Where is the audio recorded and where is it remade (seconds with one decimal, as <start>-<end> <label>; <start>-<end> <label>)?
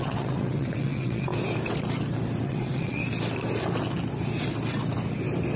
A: 0.0-1.3 remade; 1.3-2.4 recorded; 2.4-3.0 remade; 3.0-5.6 recorded